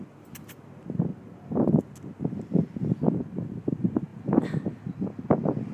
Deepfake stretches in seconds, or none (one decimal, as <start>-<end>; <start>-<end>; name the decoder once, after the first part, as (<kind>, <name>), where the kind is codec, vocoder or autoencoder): 1.1-1.8 (vocoder, BigVGAN v2)